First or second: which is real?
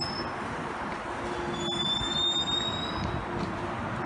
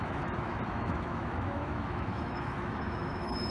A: first